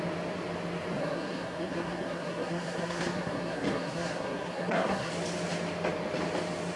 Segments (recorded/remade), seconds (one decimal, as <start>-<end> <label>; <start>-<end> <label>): 0.0-1.0 recorded; 1.0-5.1 remade; 5.1-6.8 recorded